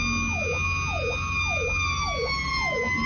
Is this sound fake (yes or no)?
no